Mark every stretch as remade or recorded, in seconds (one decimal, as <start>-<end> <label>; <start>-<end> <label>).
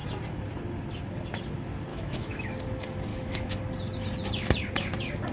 0.0-1.9 recorded; 1.9-2.5 remade; 2.5-3.1 recorded; 3.1-3.6 remade; 3.6-5.3 recorded